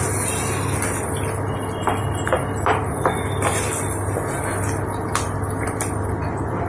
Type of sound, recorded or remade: recorded